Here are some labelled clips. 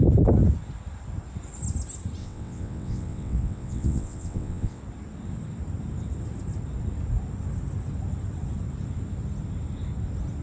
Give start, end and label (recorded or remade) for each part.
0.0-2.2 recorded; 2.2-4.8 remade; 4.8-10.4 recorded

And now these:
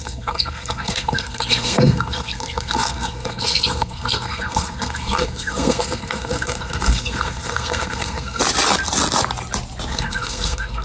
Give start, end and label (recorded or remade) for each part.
0.0-8.4 remade; 8.4-9.9 recorded; 9.9-10.8 remade

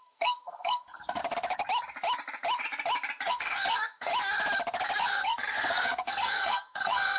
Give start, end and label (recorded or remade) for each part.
0.0-1.2 remade; 1.2-3.3 recorded; 3.3-4.1 remade; 4.1-5.0 recorded; 5.0-7.2 remade

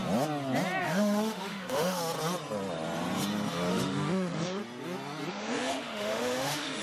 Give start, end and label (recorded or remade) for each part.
0.0-0.8 recorded; 0.8-2.0 remade; 2.0-3.7 recorded; 3.7-4.6 remade; 4.6-5.3 recorded; 5.3-6.8 remade

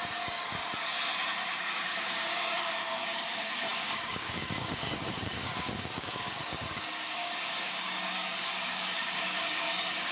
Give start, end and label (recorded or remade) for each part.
0.0-0.6 remade; 0.6-1.6 recorded; 1.6-10.1 remade

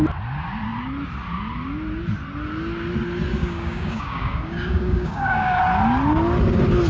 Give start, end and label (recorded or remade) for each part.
0.0-3.4 recorded; 3.4-5.6 remade; 5.6-6.9 recorded